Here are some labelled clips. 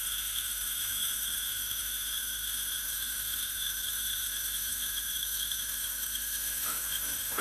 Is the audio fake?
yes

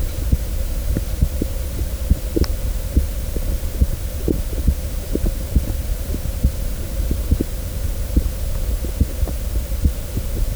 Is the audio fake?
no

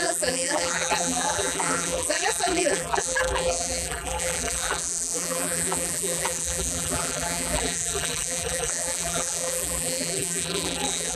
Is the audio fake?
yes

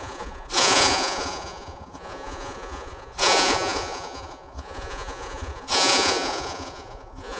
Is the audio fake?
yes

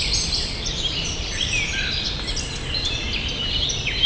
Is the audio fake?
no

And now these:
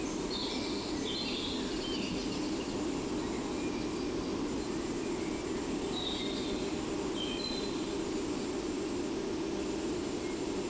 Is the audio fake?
no